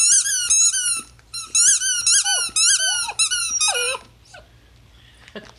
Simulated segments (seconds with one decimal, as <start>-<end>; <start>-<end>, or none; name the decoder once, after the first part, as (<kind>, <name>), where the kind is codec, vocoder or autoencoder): none